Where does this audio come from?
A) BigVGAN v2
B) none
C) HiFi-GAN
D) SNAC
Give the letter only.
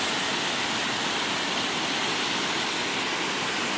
B